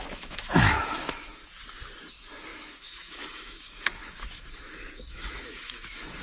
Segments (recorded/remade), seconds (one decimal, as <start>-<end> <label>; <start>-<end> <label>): 0.0-1.4 remade; 1.4-2.1 recorded; 2.1-6.2 remade